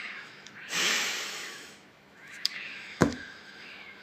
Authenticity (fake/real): fake